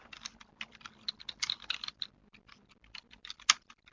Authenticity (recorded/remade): recorded